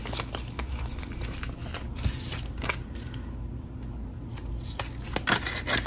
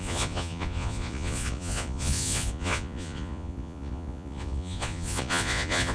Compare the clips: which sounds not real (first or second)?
second